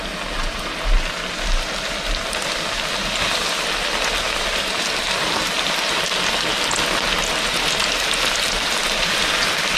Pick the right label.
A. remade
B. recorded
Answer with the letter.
B